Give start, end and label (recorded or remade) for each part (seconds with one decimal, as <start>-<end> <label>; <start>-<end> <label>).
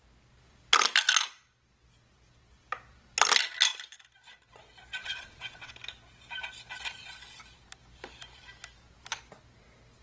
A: 0.0-5.0 recorded; 5.0-5.7 remade; 5.7-10.0 recorded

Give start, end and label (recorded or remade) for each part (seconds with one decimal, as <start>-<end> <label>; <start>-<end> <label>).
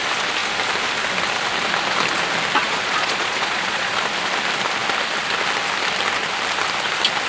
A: 0.0-2.6 recorded; 2.6-3.9 remade; 3.9-7.3 recorded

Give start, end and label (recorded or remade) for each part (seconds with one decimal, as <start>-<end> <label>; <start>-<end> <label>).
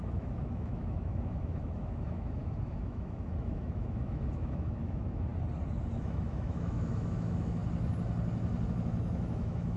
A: 0.0-5.3 remade; 5.3-6.0 recorded; 6.0-7.6 remade; 7.6-8.7 recorded; 8.7-9.8 remade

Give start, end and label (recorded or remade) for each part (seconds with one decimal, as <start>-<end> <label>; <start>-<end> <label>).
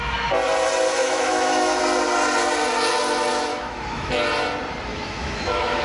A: 0.0-1.0 recorded; 1.0-1.8 remade; 1.8-3.5 recorded; 3.5-4.2 remade; 4.2-4.9 recorded; 4.9-5.8 remade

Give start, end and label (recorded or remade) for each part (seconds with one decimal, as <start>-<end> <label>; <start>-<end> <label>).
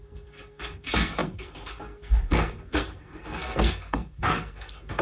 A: 0.0-5.0 remade